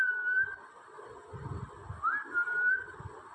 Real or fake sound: real